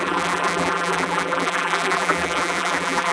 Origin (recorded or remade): remade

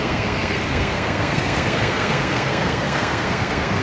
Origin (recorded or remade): remade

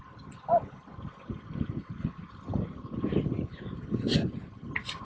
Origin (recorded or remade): recorded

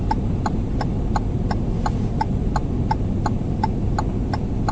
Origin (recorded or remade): recorded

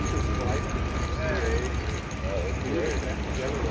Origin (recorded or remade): recorded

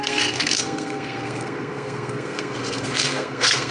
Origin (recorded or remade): remade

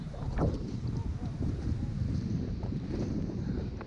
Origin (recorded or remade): remade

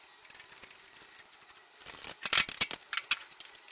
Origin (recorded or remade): remade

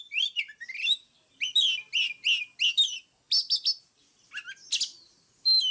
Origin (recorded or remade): recorded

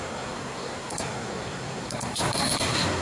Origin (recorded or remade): remade